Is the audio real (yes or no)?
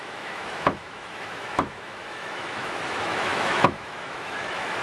no